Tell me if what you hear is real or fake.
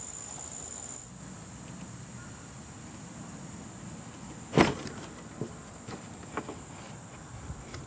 real